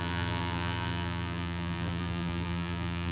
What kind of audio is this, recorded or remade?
remade